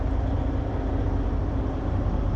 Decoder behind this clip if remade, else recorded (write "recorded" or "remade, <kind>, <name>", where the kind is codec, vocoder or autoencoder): recorded